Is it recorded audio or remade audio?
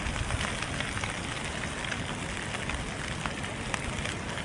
recorded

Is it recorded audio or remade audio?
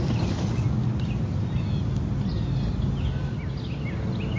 recorded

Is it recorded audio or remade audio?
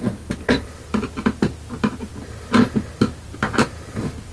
recorded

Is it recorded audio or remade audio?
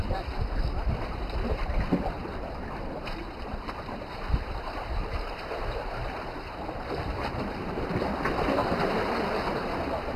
remade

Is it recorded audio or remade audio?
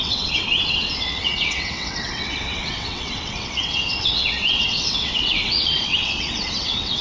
remade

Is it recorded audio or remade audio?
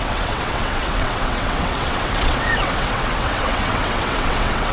remade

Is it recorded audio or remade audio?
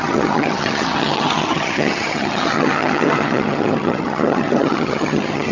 remade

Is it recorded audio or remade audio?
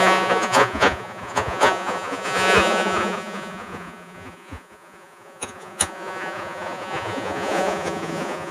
remade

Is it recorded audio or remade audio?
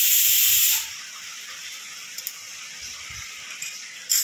remade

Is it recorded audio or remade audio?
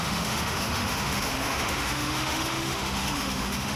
remade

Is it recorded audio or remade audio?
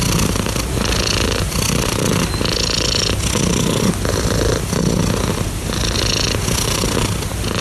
recorded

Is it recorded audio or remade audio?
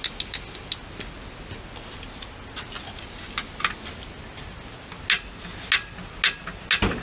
recorded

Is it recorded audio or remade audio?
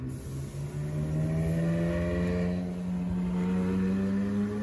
recorded